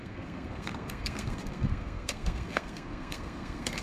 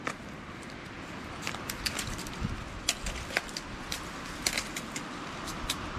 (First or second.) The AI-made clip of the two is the first